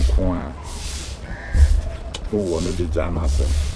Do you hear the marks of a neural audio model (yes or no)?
yes